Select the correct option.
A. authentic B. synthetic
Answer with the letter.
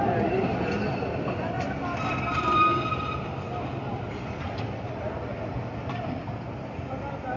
A